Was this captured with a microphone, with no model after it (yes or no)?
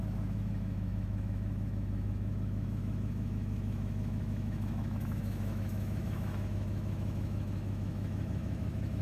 no